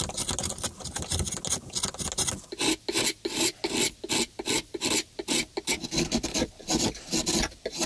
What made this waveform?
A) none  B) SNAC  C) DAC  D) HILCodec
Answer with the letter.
A